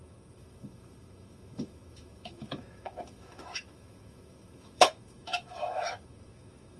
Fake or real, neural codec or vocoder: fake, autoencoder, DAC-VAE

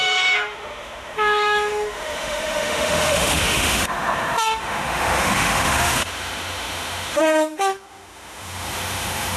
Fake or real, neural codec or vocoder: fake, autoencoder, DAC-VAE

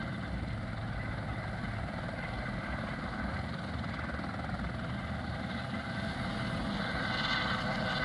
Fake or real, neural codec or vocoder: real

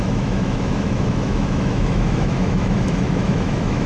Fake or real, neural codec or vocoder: fake, autoencoder, DAC-VAE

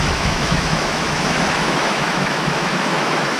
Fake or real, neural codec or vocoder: fake, autoencoder, DAC-VAE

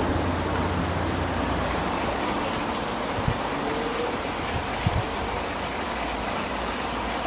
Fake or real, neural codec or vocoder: real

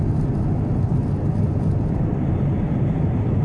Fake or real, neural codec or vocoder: real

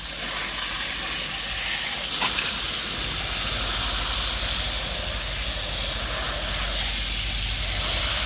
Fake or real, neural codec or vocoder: real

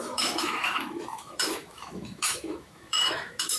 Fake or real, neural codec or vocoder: fake, autoencoder, DAC-VAE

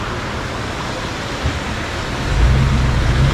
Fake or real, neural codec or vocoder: real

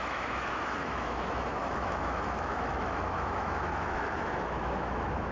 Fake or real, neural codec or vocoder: fake, autoencoder, DAC-VAE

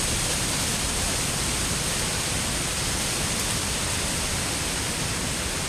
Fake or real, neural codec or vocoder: real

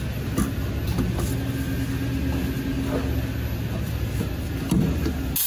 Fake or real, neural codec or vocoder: real